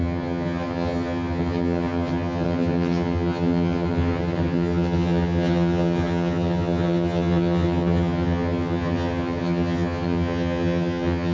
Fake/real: fake